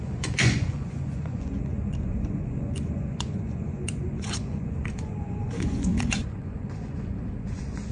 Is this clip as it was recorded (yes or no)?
no